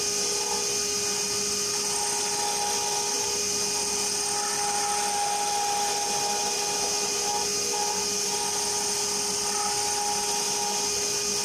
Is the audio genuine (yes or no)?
yes